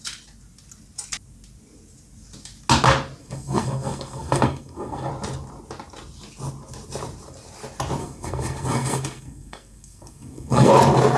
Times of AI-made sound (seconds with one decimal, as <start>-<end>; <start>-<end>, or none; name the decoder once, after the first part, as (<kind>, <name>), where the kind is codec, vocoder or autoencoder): 3.2-5.1 (codec, SNAC); 8.0-10.7